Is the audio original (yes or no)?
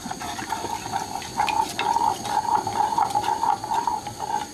yes